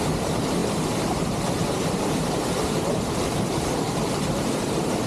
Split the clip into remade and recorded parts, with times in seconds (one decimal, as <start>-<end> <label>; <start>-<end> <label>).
0.0-5.1 remade